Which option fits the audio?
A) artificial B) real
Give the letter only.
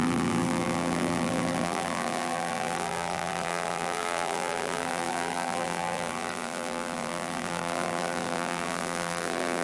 A